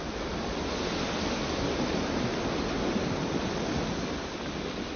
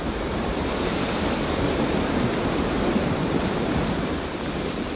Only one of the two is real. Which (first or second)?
first